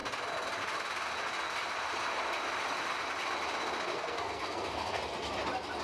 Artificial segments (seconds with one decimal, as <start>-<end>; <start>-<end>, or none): 3.9-5.0